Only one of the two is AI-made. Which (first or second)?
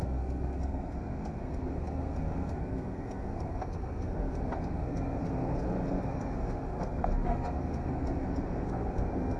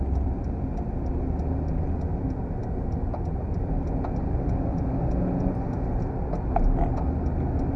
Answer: first